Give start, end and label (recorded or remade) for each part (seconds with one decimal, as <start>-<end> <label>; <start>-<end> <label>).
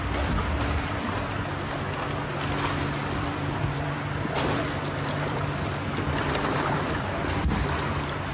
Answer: 0.0-3.0 recorded; 3.0-5.4 remade; 5.4-8.3 recorded